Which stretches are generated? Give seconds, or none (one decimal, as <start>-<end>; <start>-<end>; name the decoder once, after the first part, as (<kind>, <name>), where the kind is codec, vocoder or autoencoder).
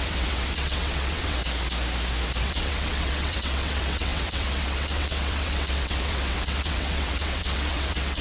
0.0-1.4 (vocoder, WaveNeXt); 2.4-8.2